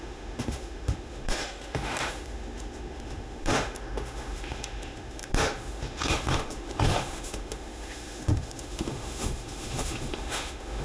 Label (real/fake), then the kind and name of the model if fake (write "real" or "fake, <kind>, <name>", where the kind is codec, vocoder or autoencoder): fake, autoencoder, DAC-VAE